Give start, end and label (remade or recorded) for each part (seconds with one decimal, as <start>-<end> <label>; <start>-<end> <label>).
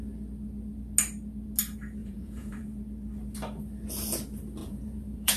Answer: 0.0-2.0 recorded; 2.0-2.6 remade; 2.6-4.6 recorded; 4.6-5.4 remade